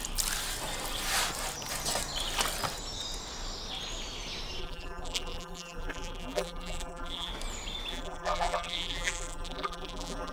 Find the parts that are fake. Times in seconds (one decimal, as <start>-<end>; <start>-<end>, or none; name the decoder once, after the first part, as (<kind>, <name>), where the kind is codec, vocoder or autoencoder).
4.6-7.3 (vocoder, BigVGAN v2); 7.9-10.3